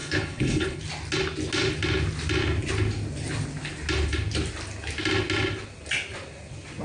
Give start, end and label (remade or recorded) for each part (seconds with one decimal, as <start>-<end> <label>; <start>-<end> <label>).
0.0-0.8 remade; 0.8-6.8 recorded